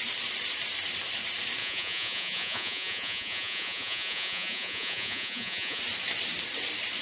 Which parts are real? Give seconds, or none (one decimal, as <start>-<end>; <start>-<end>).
0.0-1.6; 5.8-7.0